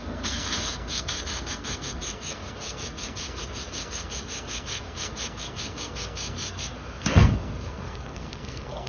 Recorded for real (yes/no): no